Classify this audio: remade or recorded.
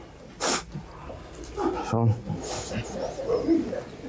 recorded